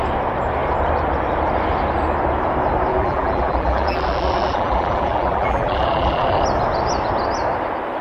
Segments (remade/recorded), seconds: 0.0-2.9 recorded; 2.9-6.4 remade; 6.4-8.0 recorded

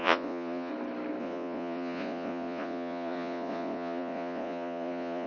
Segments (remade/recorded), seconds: 0.0-0.7 remade; 0.7-1.2 recorded; 1.2-5.3 remade

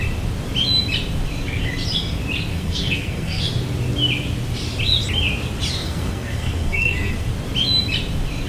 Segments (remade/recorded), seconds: 0.0-2.5 recorded; 2.5-3.4 remade; 3.4-5.8 recorded; 5.8-7.3 remade; 7.3-8.5 recorded

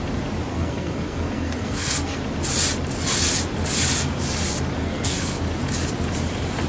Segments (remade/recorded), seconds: 0.0-0.5 recorded; 0.5-2.2 remade; 2.2-4.8 recorded; 4.8-5.4 remade; 5.4-6.7 recorded

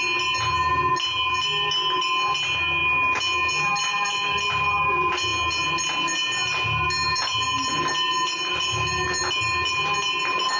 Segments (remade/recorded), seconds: 0.0-10.6 recorded